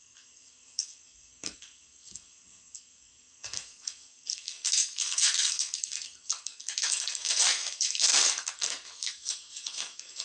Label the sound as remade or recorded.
remade